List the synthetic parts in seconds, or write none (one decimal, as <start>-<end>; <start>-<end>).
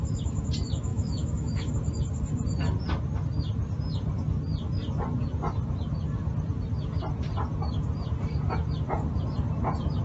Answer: 0.9-1.7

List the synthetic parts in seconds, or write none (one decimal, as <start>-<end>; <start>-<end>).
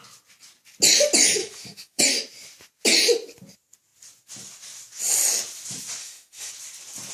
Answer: 1.4-2.0; 6.0-6.5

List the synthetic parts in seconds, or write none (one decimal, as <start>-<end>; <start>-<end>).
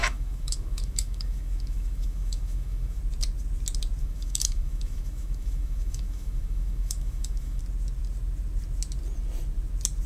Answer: 0.0-3.0; 4.0-7.6